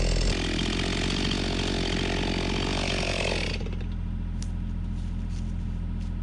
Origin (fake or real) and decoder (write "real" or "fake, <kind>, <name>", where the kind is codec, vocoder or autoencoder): real